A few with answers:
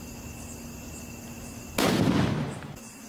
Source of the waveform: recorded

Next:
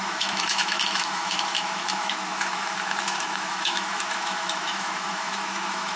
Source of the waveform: remade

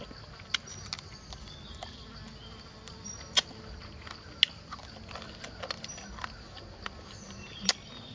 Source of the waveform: recorded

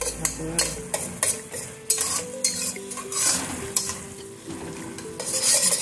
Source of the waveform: recorded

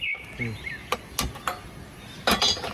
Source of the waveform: recorded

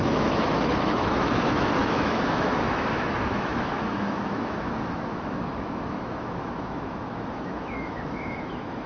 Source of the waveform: remade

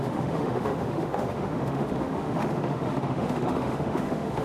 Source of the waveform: remade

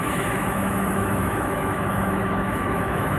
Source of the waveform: remade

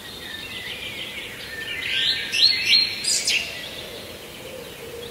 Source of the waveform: recorded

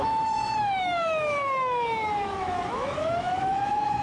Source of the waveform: remade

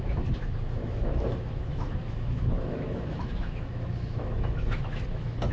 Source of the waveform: remade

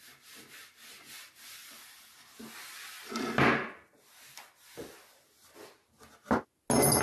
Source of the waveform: recorded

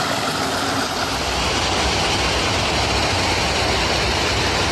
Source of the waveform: recorded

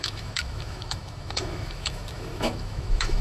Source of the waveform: remade